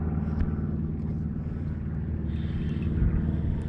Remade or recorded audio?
recorded